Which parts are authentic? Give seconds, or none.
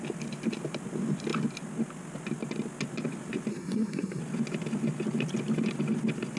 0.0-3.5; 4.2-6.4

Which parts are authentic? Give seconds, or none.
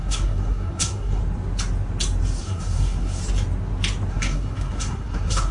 1.2-2.4; 3.2-4.1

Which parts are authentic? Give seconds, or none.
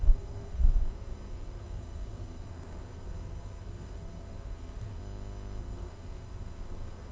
5.0-5.6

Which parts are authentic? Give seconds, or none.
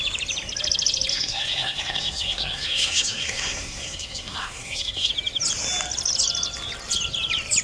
0.0-1.1; 5.1-7.6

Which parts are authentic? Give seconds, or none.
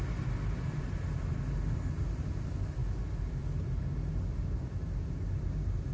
0.0-5.9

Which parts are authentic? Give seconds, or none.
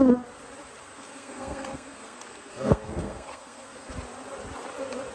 0.0-0.8; 3.9-5.1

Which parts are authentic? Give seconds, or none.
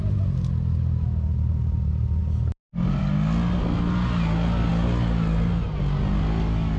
0.0-6.8